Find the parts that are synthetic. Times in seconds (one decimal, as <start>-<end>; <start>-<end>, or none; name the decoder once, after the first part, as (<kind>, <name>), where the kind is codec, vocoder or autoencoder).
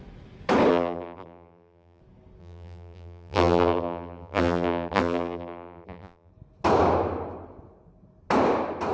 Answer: 0.7-2.0 (vocoder, BigVGAN v2); 2.4-6.3